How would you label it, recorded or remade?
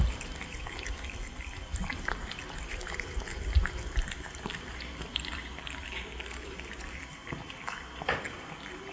remade